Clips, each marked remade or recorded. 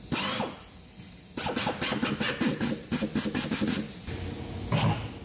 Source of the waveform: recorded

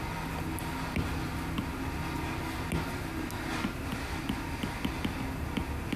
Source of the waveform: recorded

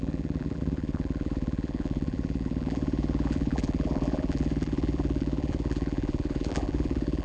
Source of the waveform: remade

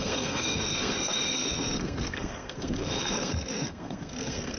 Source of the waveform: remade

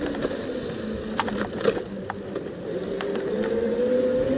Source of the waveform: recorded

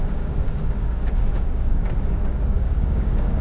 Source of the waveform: remade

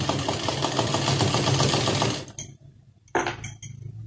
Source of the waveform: recorded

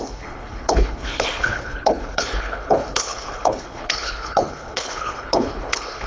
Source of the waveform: remade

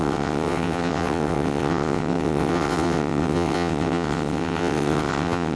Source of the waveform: remade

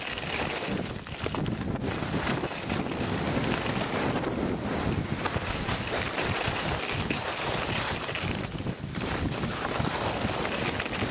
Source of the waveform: recorded